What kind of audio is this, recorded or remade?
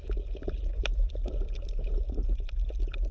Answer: recorded